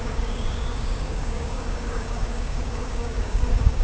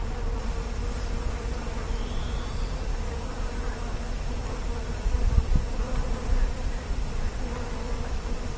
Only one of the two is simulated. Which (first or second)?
first